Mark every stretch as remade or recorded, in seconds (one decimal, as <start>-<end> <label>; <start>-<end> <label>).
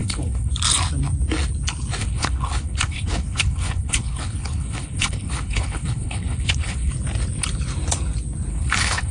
0.0-0.5 remade; 0.5-2.0 recorded; 2.0-6.9 remade; 6.9-8.5 recorded; 8.5-9.1 remade